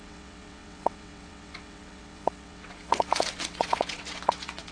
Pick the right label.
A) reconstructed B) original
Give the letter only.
A